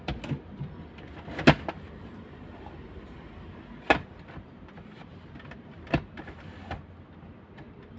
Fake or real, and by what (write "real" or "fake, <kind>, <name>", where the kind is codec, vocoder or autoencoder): real